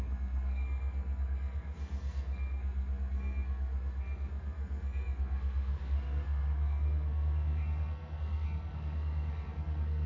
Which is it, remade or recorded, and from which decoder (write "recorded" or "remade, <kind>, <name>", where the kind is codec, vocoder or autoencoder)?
remade, codec, SNAC